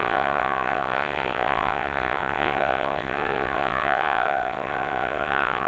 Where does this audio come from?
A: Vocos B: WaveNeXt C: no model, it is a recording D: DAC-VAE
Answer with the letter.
B